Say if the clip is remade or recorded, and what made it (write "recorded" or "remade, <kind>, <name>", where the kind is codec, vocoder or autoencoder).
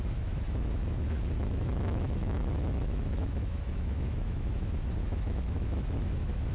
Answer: remade, autoencoder, DAC-VAE